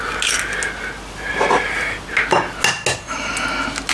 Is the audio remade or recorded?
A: recorded